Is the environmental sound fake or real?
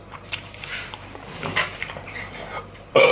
fake